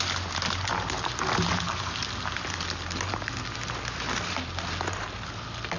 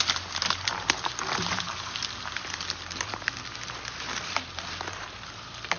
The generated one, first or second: second